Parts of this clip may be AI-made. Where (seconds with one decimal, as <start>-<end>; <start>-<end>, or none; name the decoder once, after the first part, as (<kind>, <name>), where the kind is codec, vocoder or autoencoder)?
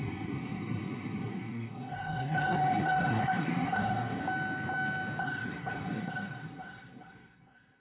0.0-4.2 (codec, SNAC); 5.2-7.8